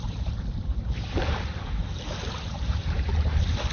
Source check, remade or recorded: remade